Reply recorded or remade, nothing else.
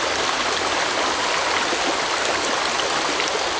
recorded